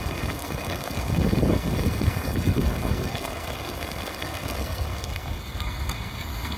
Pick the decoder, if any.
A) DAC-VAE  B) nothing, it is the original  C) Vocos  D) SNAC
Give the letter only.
D